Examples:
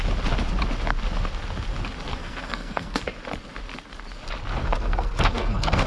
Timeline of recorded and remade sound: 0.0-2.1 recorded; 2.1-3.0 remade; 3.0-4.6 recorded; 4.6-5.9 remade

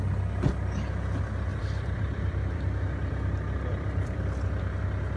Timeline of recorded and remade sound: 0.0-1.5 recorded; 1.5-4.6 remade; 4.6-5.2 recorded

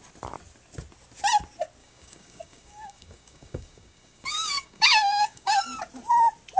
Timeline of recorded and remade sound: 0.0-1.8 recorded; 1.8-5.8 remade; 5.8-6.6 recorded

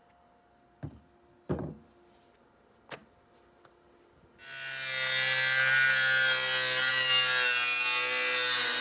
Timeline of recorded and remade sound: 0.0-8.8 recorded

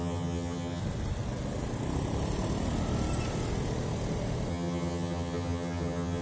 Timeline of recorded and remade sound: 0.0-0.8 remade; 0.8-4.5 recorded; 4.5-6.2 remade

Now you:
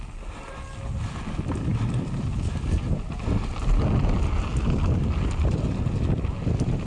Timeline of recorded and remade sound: 0.0-6.9 recorded

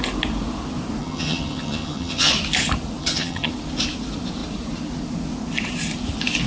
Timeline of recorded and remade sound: 0.0-1.0 recorded; 1.0-2.3 remade; 2.3-3.0 recorded; 3.0-3.5 remade; 3.5-6.5 recorded

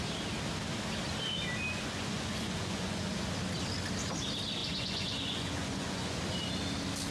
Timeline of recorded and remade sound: 0.0-1.7 recorded; 1.7-3.1 remade; 3.1-4.6 recorded; 4.6-6.2 remade; 6.2-7.1 recorded